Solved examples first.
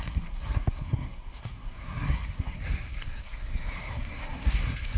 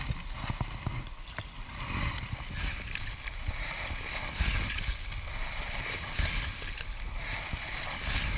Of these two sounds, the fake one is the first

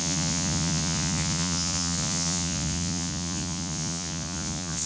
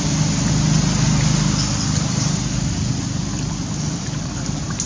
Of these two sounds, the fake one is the first